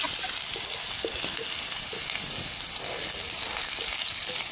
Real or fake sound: real